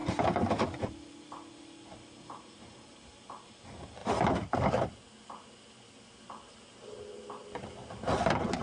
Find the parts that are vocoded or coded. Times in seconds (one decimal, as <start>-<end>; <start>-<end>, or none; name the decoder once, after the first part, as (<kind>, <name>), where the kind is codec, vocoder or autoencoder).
0.0-1.5 (vocoder, BigVGAN v2); 4.0-4.9